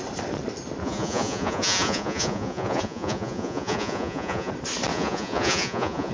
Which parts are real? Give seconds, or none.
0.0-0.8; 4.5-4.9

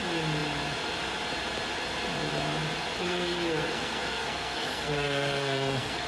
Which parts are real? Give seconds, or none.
0.0-3.0

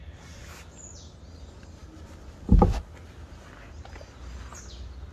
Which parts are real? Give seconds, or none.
0.0-5.1